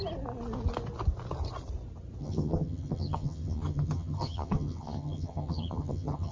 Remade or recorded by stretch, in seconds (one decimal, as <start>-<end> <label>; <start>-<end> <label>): 0.0-2.2 recorded; 2.2-6.3 remade